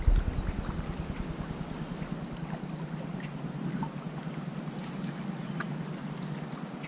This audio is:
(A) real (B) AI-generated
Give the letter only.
A